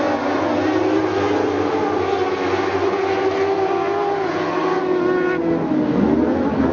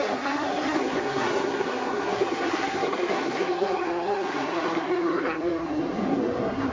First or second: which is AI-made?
second